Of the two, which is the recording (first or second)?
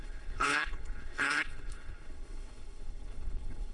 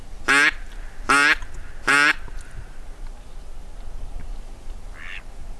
second